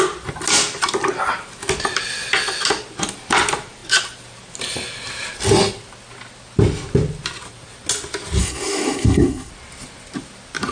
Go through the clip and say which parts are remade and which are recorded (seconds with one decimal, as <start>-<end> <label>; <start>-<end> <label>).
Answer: 0.0-8.4 recorded; 8.4-9.5 remade; 9.5-10.7 recorded